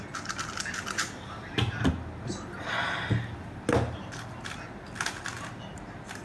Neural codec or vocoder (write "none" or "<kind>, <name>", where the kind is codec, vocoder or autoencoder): none